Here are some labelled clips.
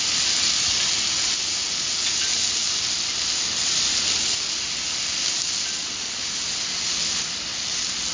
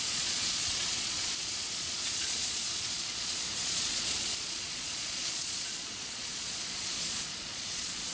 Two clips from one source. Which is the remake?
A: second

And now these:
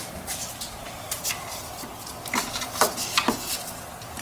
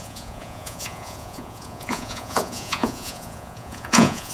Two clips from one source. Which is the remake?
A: second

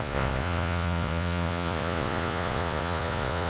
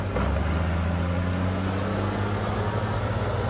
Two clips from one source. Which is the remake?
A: first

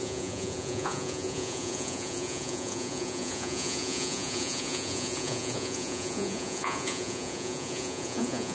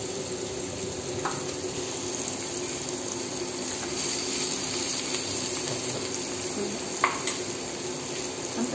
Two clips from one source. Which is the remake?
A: first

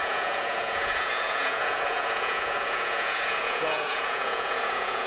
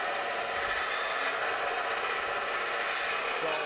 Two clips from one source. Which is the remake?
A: first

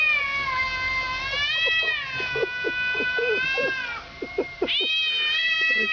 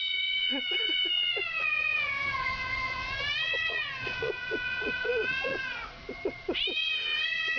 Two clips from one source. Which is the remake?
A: second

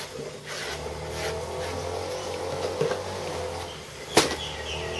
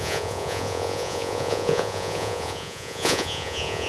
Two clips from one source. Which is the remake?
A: second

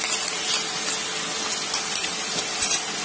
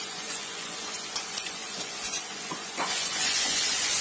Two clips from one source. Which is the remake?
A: second